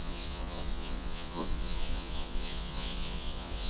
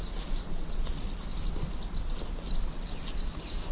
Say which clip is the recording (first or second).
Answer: second